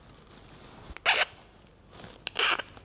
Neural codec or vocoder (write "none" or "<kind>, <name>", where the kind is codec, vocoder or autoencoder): none